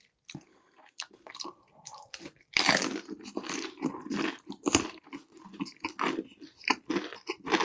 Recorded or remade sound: recorded